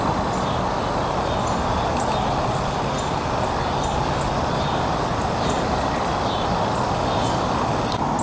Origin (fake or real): real